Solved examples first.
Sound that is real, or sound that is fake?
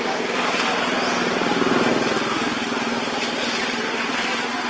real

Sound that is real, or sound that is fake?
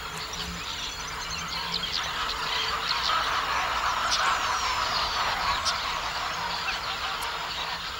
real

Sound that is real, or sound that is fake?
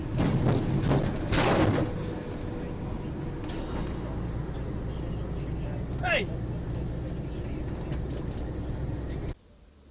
real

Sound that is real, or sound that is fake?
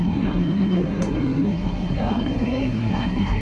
fake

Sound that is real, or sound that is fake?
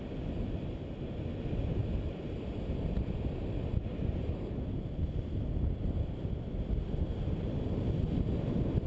real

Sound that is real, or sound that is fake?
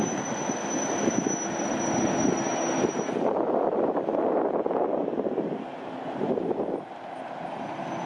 real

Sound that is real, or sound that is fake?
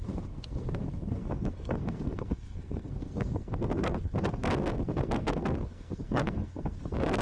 fake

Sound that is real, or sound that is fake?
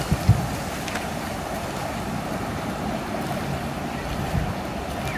real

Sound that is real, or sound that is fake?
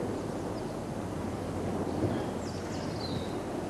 real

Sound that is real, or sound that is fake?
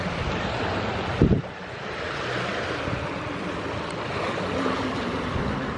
real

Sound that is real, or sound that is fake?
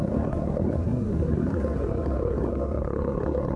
fake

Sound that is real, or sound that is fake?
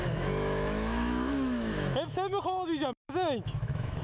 fake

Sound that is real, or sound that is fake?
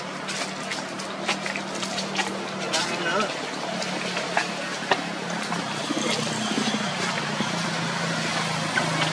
real